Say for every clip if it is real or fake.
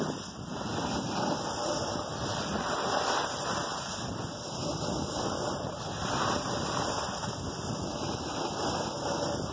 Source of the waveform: real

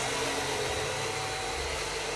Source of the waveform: real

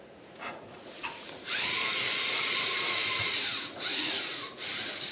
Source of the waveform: fake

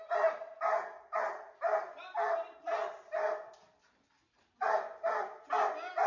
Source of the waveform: real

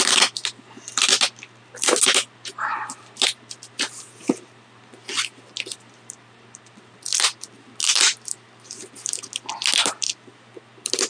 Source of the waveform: real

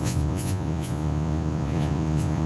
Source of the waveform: fake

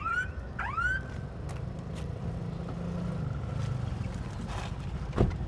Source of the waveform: real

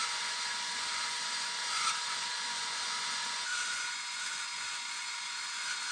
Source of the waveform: fake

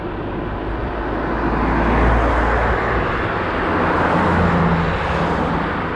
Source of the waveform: real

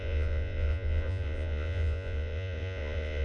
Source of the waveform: fake